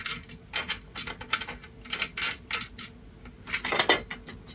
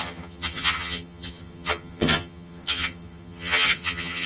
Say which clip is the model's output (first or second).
second